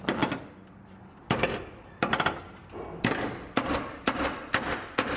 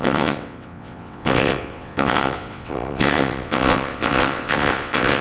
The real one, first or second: first